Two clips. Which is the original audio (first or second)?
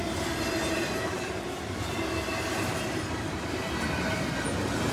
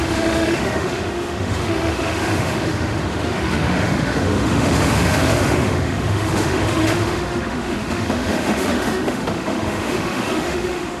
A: first